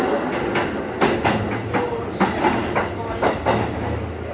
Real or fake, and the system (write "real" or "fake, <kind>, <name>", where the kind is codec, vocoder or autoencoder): real